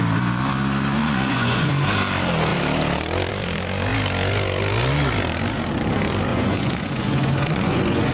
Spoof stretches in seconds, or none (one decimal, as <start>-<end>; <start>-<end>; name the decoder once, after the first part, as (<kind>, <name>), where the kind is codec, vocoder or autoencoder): 1.0-1.7 (vocoder, Vocos); 6.3-8.1